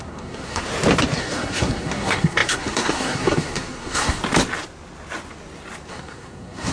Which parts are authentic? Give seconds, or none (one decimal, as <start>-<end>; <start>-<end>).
0.7-1.2; 4.2-5.9